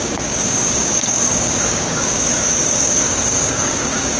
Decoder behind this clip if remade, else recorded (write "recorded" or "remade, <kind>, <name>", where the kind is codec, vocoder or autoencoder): remade, codec, DAC